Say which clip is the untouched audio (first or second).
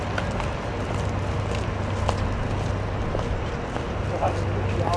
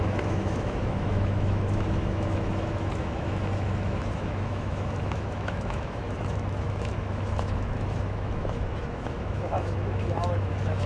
first